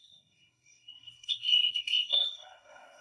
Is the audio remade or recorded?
remade